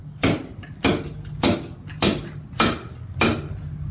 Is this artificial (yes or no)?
no